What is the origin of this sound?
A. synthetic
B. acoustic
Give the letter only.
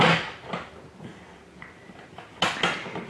B